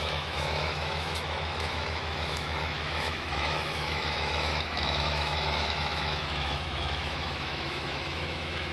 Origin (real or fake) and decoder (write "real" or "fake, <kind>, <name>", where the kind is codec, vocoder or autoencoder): fake, autoencoder, DAC-VAE